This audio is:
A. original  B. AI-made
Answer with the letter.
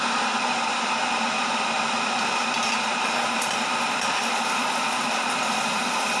B